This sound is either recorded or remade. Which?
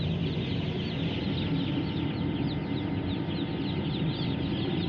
recorded